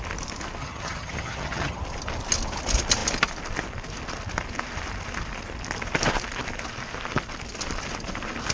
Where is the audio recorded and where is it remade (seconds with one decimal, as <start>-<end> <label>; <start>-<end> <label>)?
0.0-0.6 recorded; 0.6-1.8 remade; 1.8-8.5 recorded